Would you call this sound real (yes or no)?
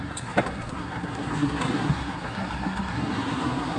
no